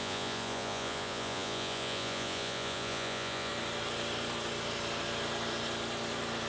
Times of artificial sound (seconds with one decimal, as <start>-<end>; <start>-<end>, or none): 0.0-3.5